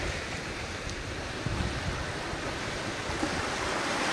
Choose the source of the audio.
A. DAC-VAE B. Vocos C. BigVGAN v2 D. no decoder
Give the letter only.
D